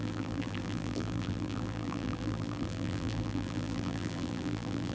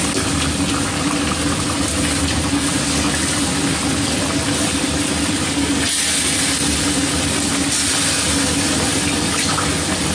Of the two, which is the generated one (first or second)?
first